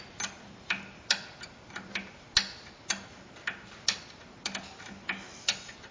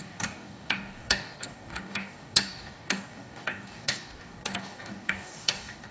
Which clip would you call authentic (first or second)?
first